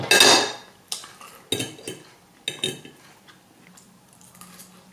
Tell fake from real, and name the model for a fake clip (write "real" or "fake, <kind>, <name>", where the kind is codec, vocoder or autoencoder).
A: real